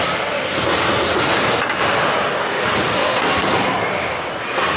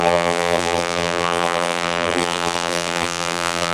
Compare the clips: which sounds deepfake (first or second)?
second